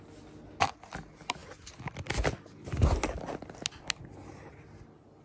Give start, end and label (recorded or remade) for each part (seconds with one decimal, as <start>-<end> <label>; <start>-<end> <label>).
0.0-5.2 recorded